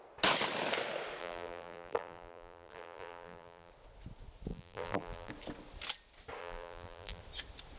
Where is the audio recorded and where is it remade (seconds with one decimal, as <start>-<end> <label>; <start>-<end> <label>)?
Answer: 0.0-1.2 recorded; 1.2-3.7 remade; 3.7-4.5 recorded; 4.5-5.3 remade; 5.3-6.4 recorded; 6.4-7.2 remade; 7.2-7.8 recorded

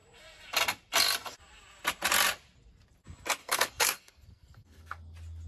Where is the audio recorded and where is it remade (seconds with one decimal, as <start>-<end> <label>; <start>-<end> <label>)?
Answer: 0.0-3.4 recorded; 3.4-5.0 remade; 5.0-5.5 recorded